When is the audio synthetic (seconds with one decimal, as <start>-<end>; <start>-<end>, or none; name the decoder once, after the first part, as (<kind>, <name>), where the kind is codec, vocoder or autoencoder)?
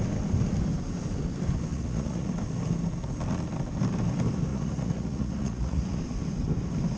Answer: 1.7-2.3 (vocoder, Vocos); 4.5-6.0